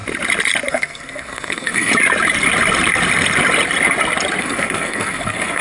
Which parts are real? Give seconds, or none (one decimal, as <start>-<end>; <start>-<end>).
0.0-0.7; 1.9-4.4